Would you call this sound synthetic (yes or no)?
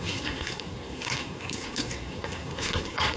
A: yes